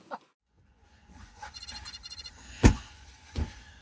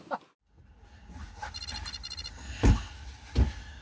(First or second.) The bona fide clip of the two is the second